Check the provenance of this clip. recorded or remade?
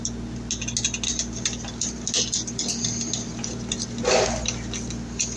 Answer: recorded